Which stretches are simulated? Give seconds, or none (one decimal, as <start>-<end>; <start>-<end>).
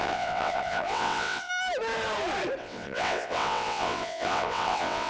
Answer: 0.0-1.5; 2.6-5.1